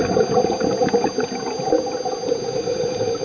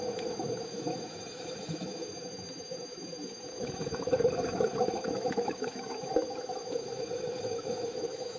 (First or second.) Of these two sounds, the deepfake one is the second